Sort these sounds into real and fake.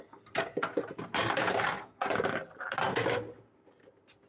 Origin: real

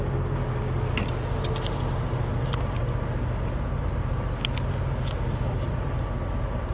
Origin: real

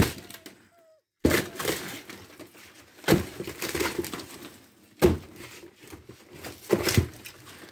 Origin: real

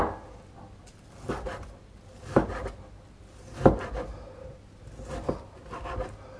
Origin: real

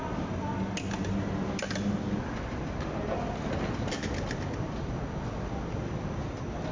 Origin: real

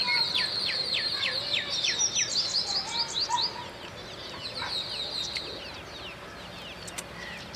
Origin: real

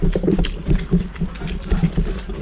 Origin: real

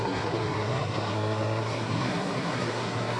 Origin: fake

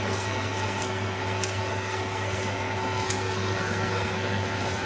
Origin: fake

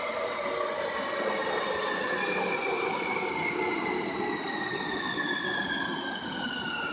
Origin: real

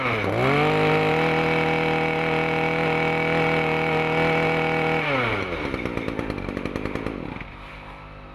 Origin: real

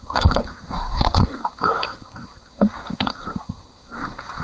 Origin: fake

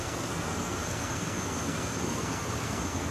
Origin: fake